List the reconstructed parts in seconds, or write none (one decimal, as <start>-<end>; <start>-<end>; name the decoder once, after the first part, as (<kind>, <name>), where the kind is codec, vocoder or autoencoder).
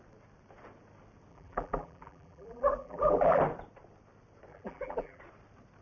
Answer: 1.3-3.4 (vocoder, BigVGAN v2); 4.5-5.2